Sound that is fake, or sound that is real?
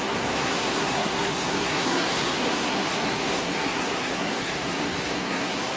fake